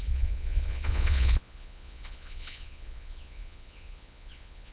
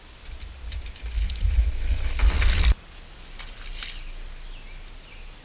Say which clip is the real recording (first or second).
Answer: second